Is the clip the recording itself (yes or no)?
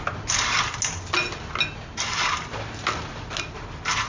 yes